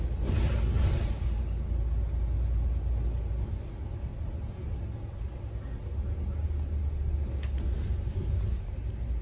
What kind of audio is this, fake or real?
real